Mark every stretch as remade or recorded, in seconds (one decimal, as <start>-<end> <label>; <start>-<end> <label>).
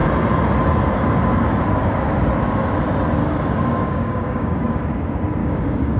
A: 0.0-3.2 recorded; 3.2-4.8 remade; 4.8-5.4 recorded; 5.4-6.0 remade